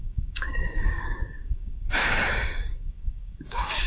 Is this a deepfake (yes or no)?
yes